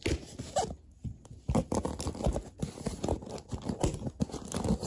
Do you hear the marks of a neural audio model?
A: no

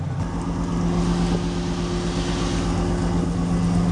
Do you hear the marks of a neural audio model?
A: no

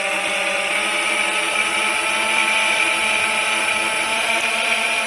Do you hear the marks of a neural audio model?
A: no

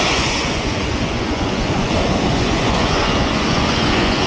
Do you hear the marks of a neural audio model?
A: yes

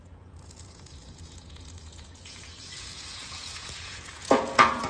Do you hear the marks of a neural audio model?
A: yes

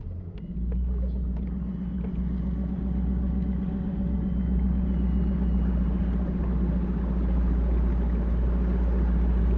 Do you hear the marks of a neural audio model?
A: no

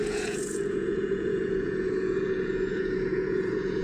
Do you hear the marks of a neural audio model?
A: yes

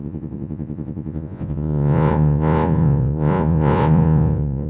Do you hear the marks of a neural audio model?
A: yes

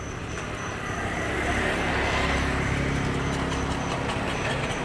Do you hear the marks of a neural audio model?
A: no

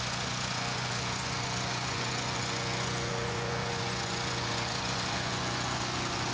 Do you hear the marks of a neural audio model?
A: yes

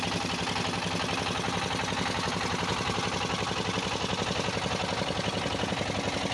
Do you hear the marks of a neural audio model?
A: no